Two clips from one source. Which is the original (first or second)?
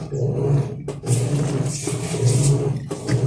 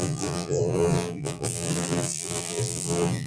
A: first